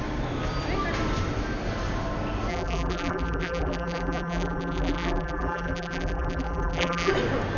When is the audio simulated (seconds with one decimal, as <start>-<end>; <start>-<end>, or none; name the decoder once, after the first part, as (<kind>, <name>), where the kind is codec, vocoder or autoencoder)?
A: 2.5-7.1 (vocoder, BigVGAN v2)